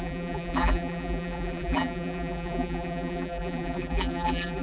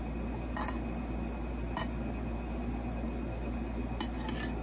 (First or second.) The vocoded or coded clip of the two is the first